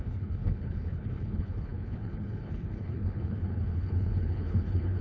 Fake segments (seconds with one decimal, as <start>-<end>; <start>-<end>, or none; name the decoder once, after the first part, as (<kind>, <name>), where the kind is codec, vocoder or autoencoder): 0.0-5.0 (codec, HILCodec)